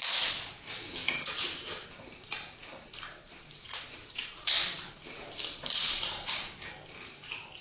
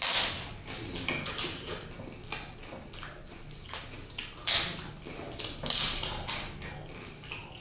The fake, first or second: first